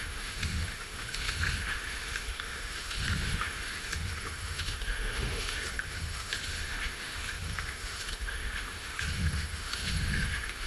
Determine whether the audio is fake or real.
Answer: fake